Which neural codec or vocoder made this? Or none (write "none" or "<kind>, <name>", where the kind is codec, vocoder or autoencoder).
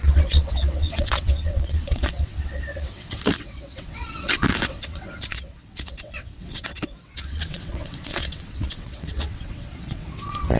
vocoder, WaveNeXt